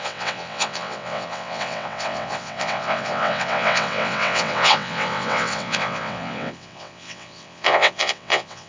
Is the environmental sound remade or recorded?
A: remade